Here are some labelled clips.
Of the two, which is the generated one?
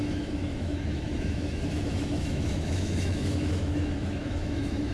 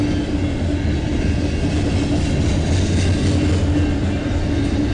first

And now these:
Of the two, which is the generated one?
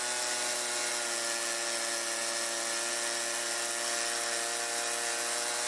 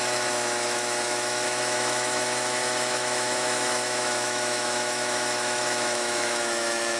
second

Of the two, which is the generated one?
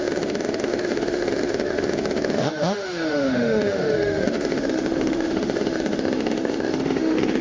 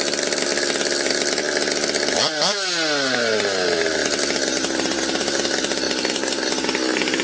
first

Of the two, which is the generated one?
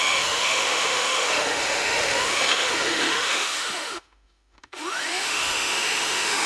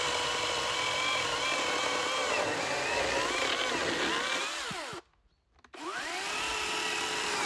first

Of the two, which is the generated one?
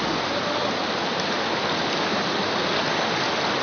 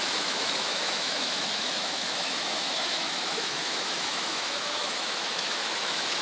second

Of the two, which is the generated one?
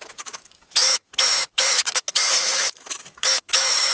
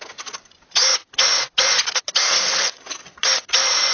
first